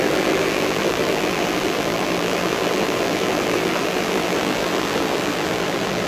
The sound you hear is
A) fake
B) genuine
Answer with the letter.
A